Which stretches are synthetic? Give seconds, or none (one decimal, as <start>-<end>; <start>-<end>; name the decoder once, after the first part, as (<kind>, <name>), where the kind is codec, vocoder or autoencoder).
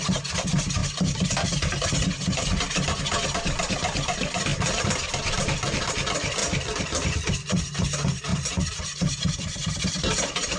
4.5-5.9 (vocoder, BigVGAN v2); 6.4-7.3